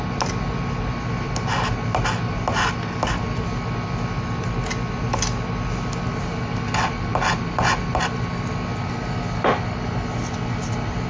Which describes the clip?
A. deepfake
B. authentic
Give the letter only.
B